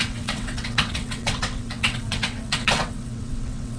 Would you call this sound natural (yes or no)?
no